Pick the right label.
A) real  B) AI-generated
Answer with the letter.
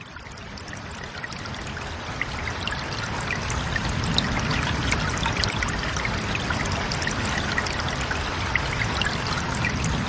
A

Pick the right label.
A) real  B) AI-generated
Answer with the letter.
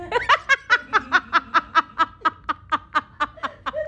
A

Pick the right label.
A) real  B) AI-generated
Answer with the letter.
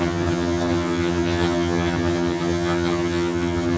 B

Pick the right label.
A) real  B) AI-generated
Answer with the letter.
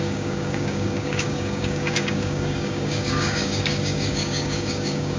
B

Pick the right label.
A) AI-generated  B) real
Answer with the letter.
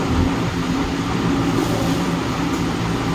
B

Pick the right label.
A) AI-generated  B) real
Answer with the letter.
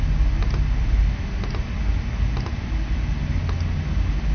B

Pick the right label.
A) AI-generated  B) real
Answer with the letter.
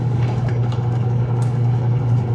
A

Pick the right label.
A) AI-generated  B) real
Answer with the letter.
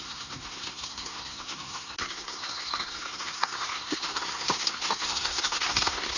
A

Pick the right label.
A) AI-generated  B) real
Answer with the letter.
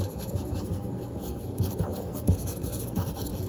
A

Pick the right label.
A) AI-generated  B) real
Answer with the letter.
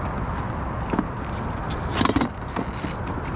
B